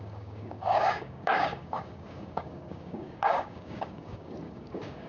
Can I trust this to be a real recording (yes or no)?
no